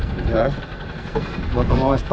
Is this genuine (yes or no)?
no